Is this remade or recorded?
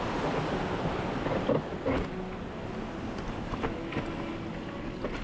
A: recorded